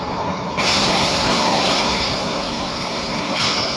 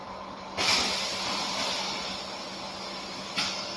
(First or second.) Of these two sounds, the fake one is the first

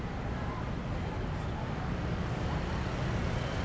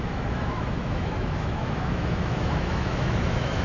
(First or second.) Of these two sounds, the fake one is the second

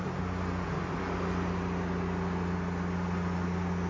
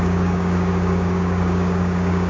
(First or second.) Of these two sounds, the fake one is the second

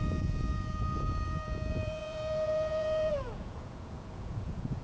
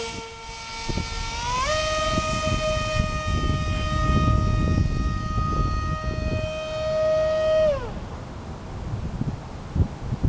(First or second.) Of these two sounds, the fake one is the first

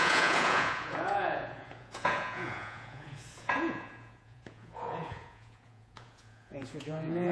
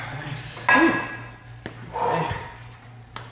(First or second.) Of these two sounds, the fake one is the first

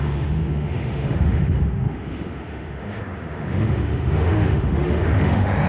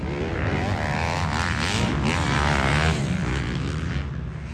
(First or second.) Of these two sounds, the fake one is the first